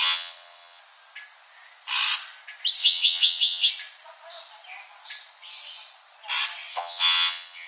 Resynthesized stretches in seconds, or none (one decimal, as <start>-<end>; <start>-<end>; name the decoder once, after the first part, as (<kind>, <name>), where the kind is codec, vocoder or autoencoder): 0.0-0.8 (vocoder, WaveNeXt); 2.8-3.7; 6.7-7.7